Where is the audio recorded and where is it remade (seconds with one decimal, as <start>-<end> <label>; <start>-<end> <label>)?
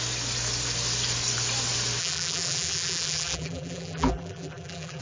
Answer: 0.0-2.0 recorded; 2.0-5.0 remade